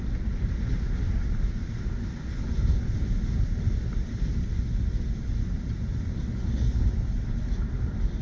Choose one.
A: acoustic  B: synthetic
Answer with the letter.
A